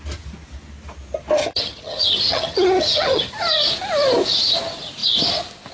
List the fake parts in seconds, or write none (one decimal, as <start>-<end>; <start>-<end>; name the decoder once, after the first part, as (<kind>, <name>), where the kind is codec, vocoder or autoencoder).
1.4-3.3 (vocoder, HiFi-GAN)